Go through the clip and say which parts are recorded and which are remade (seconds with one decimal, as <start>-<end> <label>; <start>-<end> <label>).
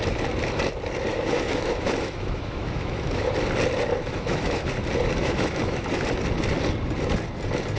0.0-1.1 recorded; 1.1-3.3 remade; 3.3-4.0 recorded; 4.0-4.7 remade; 4.7-5.2 recorded; 5.2-5.9 remade; 5.9-7.8 recorded